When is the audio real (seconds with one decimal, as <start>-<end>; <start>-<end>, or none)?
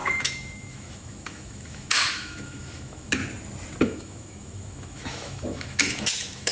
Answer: 3.2-3.8